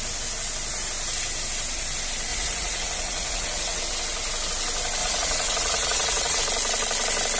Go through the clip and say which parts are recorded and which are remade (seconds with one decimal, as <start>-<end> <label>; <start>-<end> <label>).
0.0-2.3 recorded; 2.3-3.8 remade; 3.8-5.0 recorded; 5.0-6.4 remade; 6.4-7.4 recorded